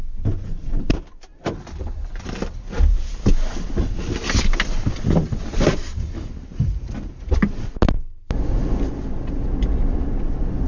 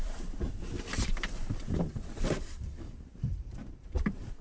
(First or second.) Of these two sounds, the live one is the first